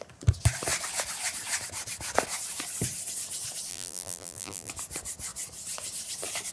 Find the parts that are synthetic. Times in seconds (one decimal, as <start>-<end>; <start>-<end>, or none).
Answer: 3.7-4.7